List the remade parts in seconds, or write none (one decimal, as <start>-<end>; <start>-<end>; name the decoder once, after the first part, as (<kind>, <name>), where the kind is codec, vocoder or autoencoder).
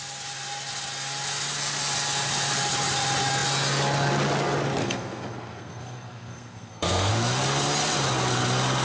4.8-7.1 (codec, SNAC)